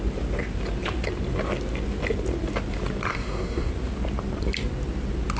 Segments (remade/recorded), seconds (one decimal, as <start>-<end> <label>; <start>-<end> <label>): 0.0-3.1 recorded; 3.1-3.7 remade; 3.7-5.4 recorded